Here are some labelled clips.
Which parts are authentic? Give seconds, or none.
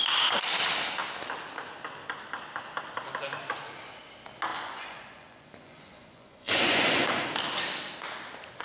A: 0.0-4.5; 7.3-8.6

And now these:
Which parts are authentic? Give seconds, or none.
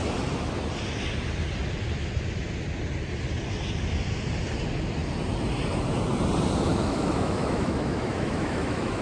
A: 0.0-6.7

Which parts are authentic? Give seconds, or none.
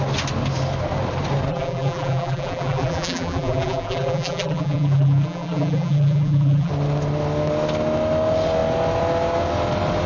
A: 0.0-1.5; 6.7-10.1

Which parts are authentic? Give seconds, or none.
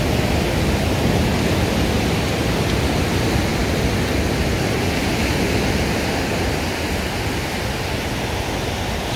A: 0.0-9.2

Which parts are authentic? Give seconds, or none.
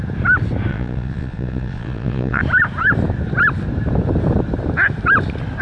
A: 0.0-0.7; 2.4-5.6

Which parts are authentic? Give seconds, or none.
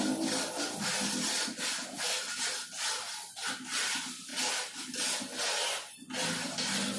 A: 0.0-7.0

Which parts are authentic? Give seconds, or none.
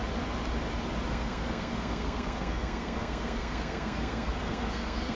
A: 0.0-1.1